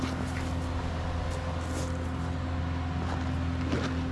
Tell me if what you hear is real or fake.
real